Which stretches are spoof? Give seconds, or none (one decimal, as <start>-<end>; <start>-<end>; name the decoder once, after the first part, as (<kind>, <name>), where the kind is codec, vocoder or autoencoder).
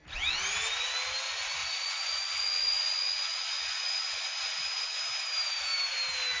1.6-5.0 (vocoder, Vocos)